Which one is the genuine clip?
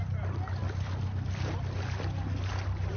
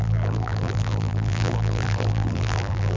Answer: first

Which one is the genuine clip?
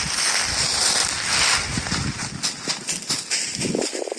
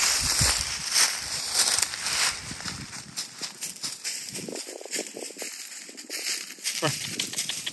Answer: first